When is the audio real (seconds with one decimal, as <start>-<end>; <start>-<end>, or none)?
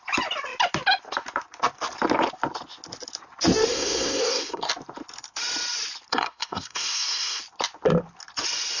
0.0-3.7; 4.7-6.1; 7.4-8.8